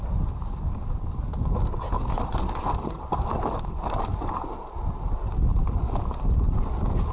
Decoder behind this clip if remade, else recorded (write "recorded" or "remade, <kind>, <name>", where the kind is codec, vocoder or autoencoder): recorded